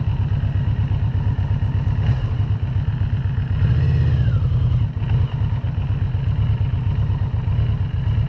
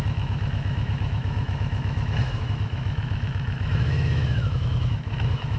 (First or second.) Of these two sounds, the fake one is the second